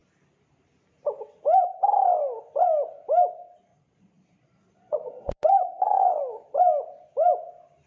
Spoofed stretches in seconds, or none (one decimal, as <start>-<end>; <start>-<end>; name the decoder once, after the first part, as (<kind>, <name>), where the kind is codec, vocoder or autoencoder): 3.7-6.2 (vocoder, Vocos)